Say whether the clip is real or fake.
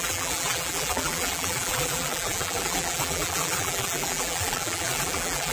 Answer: fake